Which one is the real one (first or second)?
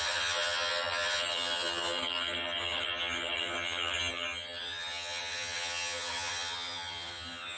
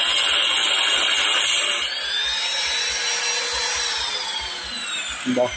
second